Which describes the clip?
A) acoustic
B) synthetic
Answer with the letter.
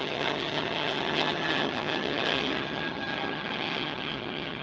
B